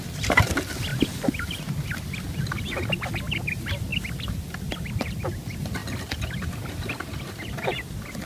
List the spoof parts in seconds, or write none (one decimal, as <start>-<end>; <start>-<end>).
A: none